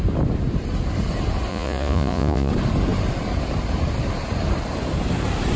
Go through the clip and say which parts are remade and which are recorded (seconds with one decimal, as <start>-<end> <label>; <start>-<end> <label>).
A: 0.0-1.5 recorded; 1.5-2.5 remade; 2.5-5.6 recorded

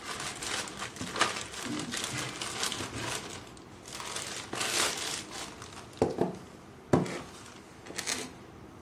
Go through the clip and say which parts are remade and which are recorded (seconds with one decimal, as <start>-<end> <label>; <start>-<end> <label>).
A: 0.0-8.8 recorded

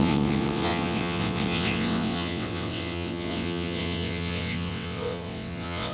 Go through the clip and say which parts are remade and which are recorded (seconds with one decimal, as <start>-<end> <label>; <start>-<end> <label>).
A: 0.0-5.9 remade